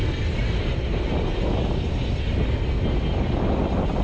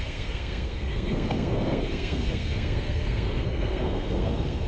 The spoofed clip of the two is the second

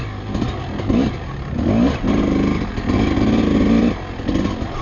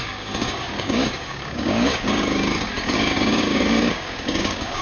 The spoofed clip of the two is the second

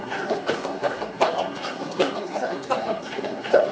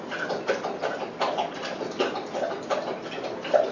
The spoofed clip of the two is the first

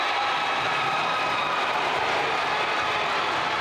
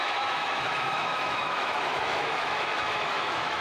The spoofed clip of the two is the second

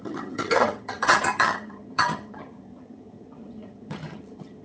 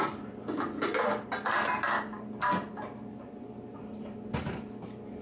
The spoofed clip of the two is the first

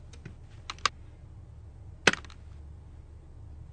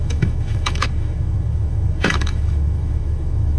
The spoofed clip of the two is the second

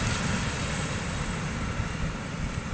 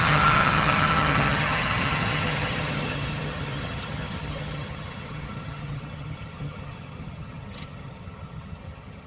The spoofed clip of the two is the second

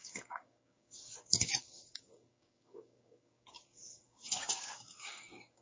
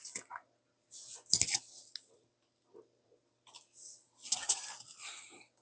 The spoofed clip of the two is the first